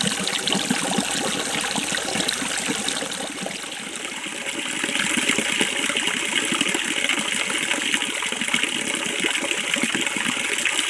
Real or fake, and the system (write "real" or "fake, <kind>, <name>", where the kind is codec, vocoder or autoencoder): real